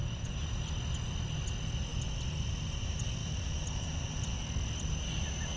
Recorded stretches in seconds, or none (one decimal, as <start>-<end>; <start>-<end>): 0.6-3.2; 4.4-5.6